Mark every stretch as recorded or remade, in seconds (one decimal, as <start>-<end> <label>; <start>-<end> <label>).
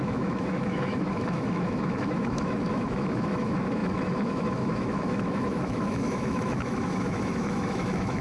0.0-8.2 remade